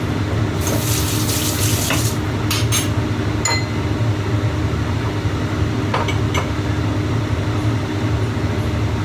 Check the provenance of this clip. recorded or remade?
recorded